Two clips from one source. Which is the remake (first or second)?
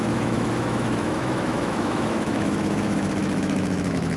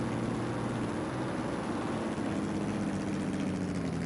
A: first